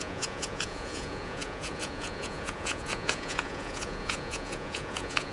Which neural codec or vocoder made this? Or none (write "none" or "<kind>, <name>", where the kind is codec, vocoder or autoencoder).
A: vocoder, Vocos